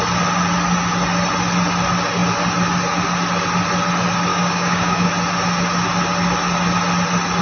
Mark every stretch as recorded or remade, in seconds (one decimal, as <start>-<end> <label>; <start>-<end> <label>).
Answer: 0.0-4.3 recorded; 4.3-5.1 remade; 5.1-7.4 recorded